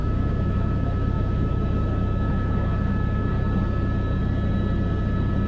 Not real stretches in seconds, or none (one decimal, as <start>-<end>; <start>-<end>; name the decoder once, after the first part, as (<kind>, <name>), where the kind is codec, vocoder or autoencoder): 0.0-3.3 (autoencoder, DAC-VAE)